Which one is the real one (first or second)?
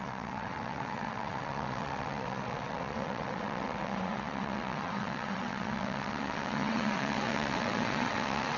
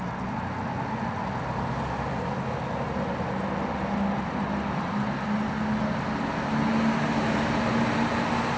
second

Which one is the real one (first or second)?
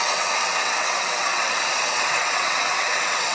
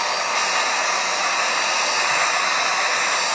second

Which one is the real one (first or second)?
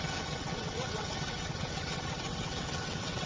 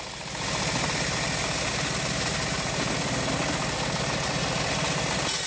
second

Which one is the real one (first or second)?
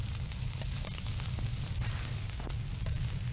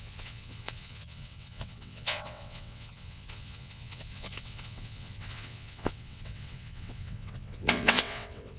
first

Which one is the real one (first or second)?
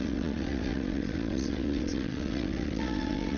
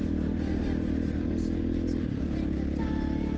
second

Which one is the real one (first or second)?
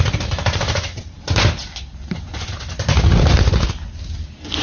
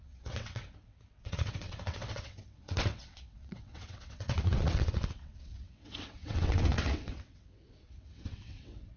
first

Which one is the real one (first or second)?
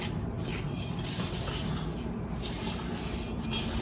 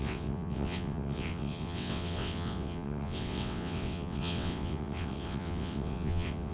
first